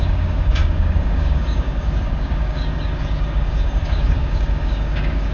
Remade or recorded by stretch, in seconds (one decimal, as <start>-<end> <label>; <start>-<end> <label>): 0.0-5.3 remade